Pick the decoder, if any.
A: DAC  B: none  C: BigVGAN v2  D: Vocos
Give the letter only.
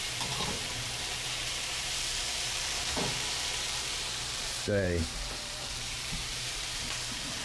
C